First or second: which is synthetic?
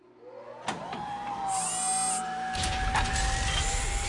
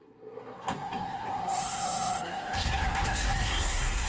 second